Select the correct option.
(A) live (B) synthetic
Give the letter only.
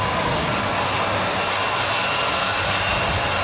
A